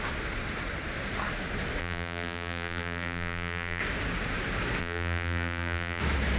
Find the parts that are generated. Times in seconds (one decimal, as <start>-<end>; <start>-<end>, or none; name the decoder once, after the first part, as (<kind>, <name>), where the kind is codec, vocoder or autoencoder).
1.8-3.8 (vocoder, BigVGAN v2); 4.8-6.0